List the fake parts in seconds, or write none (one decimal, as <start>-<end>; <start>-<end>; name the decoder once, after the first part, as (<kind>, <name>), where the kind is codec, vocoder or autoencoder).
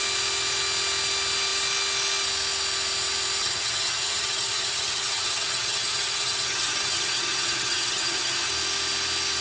3.4-8.5 (vocoder, HiFi-GAN)